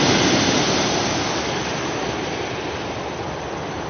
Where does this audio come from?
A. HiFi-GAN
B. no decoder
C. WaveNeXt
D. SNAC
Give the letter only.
B